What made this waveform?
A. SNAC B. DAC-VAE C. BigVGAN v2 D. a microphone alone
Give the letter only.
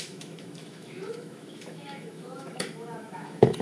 B